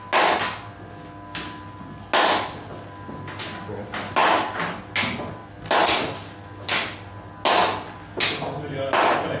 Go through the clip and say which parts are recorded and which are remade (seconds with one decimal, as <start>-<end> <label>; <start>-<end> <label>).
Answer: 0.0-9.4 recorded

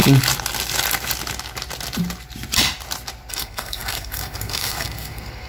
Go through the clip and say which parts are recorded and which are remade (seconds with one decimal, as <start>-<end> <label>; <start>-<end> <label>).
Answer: 0.0-3.3 recorded; 3.3-5.5 remade

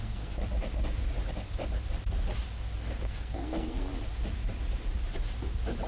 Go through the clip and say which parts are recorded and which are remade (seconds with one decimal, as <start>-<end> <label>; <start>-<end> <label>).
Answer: 0.0-0.4 remade; 0.4-2.9 recorded; 2.9-3.9 remade; 3.9-5.9 recorded